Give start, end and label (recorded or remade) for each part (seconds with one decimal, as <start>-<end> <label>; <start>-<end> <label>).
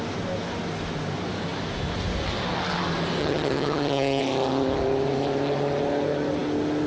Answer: 0.0-3.2 recorded; 3.2-4.2 remade; 4.2-6.9 recorded